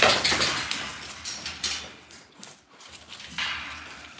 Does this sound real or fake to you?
real